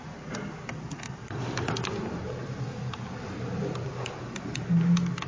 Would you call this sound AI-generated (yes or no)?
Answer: no